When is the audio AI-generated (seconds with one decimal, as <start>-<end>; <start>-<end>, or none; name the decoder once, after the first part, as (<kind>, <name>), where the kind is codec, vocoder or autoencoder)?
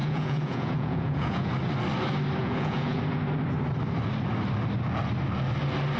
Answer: 0.0-1.5 (vocoder, Vocos); 2.4-3.0